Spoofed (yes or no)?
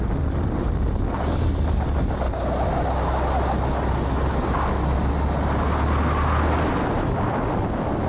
no